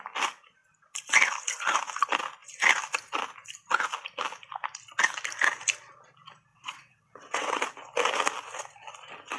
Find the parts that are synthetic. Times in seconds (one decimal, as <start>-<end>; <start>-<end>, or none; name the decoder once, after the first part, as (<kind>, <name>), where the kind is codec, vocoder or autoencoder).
6.5-7.6 (vocoder, WaveNeXt)